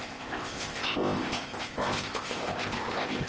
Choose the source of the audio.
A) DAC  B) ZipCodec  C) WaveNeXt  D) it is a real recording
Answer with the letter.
B